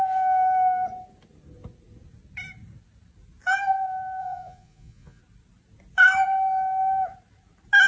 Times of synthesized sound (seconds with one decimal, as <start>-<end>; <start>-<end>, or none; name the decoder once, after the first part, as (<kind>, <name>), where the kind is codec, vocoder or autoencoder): 4.2-5.2 (vocoder, Vocos)